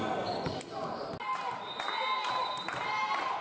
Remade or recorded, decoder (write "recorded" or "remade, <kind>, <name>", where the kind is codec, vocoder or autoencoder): recorded